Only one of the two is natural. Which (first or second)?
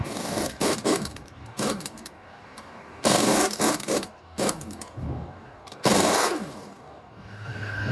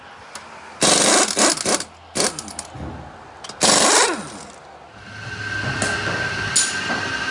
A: second